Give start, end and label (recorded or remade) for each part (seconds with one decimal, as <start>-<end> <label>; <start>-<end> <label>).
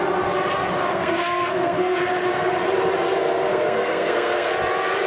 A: 0.0-0.9 recorded; 0.9-2.0 remade; 2.0-3.5 recorded; 3.5-4.5 remade; 4.5-5.1 recorded